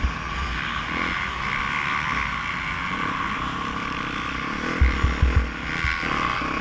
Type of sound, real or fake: real